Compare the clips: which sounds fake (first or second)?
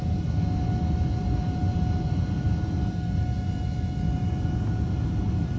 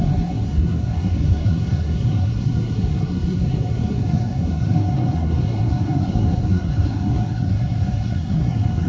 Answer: second